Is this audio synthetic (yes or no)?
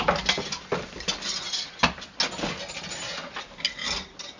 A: no